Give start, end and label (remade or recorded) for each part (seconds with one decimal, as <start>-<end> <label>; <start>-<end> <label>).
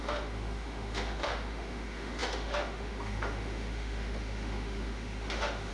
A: 0.0-5.7 remade